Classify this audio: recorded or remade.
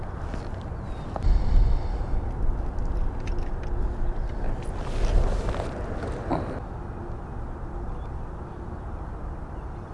recorded